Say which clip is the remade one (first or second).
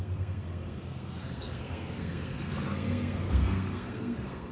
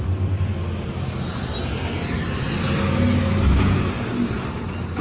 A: first